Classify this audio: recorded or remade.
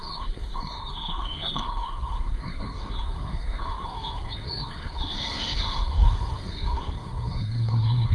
remade